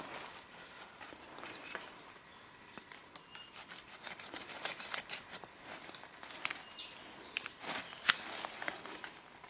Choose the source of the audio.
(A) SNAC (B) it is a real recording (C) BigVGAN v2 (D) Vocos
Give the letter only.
C